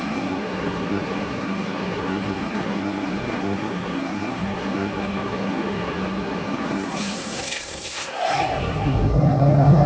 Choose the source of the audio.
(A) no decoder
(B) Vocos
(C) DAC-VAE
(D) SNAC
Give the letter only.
D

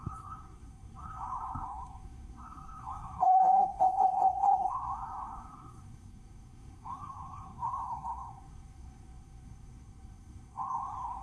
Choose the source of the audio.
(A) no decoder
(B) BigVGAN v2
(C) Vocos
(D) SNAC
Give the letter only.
D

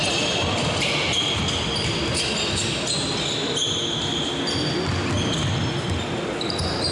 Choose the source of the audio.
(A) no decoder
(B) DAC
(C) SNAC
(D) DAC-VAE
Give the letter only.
A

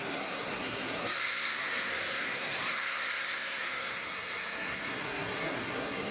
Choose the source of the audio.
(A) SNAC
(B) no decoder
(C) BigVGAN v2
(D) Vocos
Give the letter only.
A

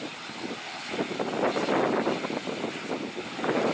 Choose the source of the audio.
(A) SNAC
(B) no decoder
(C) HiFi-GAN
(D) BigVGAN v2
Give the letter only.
B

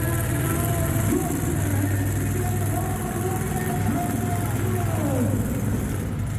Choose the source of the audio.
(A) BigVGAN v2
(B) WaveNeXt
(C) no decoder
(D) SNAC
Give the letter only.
C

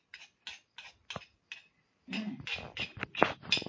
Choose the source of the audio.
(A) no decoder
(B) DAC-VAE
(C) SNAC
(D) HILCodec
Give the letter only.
A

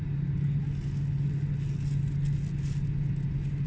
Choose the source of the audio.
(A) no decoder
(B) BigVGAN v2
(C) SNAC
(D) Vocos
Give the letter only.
A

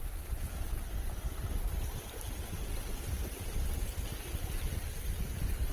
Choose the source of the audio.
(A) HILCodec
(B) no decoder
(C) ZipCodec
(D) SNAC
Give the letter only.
B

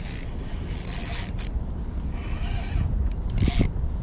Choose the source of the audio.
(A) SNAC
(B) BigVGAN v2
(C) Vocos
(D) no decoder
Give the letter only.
D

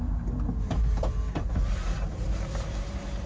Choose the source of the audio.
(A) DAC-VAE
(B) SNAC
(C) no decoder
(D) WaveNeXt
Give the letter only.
C